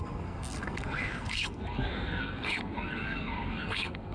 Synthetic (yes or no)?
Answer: yes